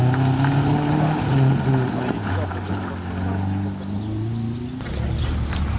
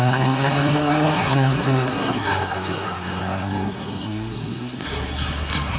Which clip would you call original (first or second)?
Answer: first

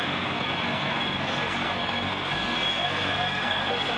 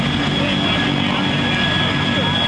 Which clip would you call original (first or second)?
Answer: second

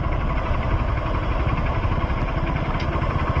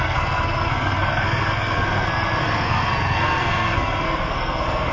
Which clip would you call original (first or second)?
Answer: first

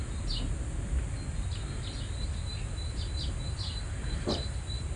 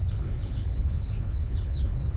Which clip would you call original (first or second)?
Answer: first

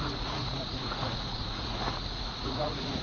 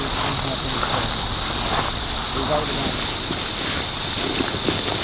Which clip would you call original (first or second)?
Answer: second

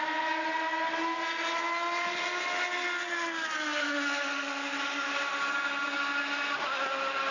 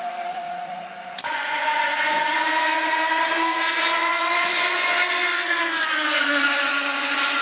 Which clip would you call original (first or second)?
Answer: first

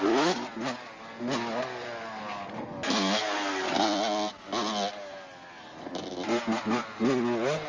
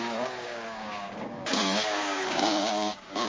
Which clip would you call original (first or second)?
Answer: first